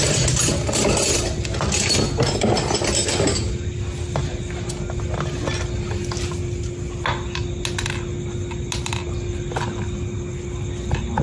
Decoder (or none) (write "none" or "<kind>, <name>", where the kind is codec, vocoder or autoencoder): none